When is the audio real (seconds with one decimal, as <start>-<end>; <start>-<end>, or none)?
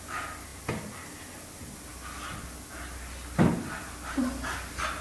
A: 0.0-5.0